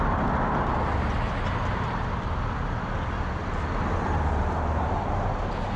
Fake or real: real